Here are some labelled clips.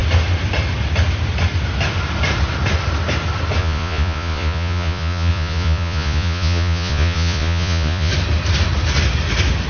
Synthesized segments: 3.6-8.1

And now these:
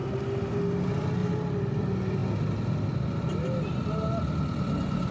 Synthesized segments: none

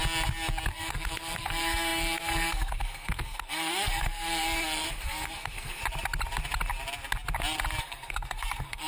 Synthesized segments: 0.7-5.8; 7.8-8.9

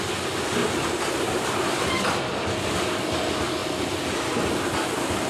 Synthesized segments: none

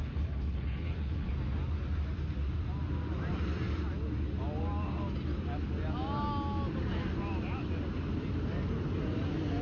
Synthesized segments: 0.0-1.3